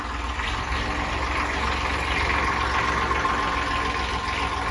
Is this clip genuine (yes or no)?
yes